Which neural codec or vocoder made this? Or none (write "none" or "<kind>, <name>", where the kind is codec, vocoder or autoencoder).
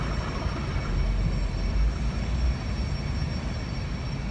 none